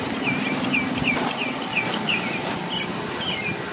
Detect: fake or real real